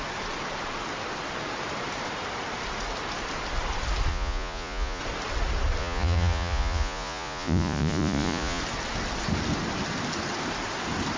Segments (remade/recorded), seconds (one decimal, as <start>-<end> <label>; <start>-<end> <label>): 0.0-4.1 recorded; 4.1-5.0 remade; 5.0-5.8 recorded; 5.8-8.6 remade; 8.6-11.2 recorded